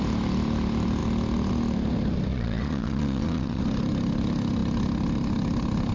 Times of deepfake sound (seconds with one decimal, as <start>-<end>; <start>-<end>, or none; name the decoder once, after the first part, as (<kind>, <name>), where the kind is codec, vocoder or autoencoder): 2.3-3.6 (vocoder, Vocos)